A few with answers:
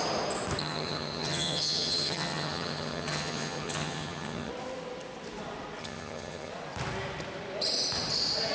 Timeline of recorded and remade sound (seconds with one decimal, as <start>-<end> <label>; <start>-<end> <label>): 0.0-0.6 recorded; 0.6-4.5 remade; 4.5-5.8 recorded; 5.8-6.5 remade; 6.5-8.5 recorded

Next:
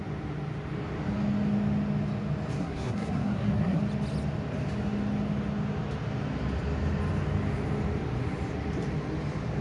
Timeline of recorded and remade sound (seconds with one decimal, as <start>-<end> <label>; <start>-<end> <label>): 0.0-2.6 recorded; 2.6-3.8 remade; 3.8-9.6 recorded

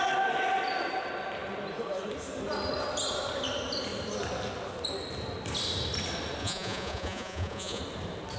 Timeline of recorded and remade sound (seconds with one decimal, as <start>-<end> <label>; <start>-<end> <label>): 0.0-6.4 recorded; 6.4-7.8 remade; 7.8-8.4 recorded

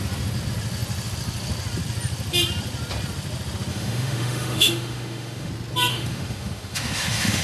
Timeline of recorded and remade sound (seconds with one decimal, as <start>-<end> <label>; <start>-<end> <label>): 0.0-3.7 recorded; 3.7-5.5 remade; 5.5-5.9 recorded; 5.9-7.4 remade

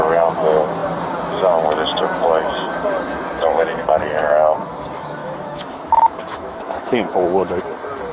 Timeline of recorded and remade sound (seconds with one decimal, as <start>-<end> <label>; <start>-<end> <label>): 0.0-5.2 recorded; 5.2-7.6 remade; 7.6-8.1 recorded